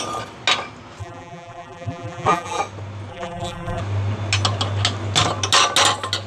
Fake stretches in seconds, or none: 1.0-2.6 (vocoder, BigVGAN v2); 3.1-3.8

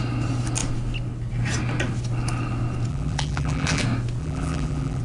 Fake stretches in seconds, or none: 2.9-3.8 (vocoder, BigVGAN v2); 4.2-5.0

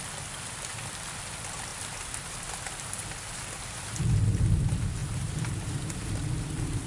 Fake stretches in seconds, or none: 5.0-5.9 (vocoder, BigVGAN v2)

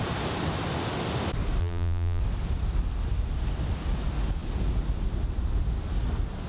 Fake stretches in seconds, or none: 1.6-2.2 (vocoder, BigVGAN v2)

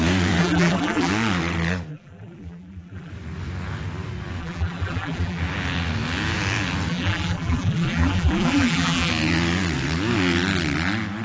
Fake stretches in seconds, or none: 0.4-1.1 (vocoder, BigVGAN v2); 1.9-3.1; 4.4-5.4; 6.9-9.1

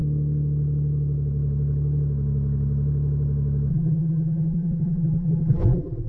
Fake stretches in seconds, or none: 3.7-6.1 (vocoder, BigVGAN v2)

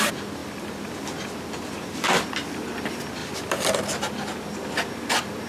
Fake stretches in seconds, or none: 0.4-1.3 (vocoder, BigVGAN v2); 3.2-3.8

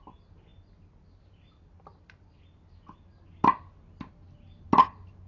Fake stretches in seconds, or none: none